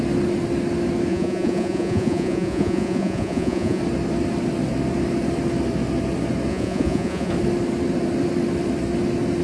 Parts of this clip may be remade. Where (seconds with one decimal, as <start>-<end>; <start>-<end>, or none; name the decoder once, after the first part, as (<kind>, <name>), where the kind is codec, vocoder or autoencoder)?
1.1-3.8 (vocoder, Vocos); 6.5-7.3